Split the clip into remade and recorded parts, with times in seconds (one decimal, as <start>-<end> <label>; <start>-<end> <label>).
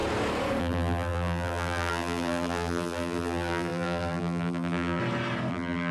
0.0-0.6 recorded; 0.6-5.0 remade; 5.0-5.5 recorded; 5.5-5.9 remade